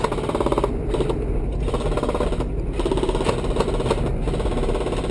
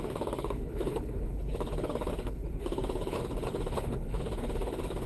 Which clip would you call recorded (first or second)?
first